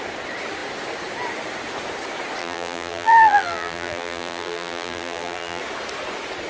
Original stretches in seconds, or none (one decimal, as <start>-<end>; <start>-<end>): 0.0-2.4; 5.6-6.5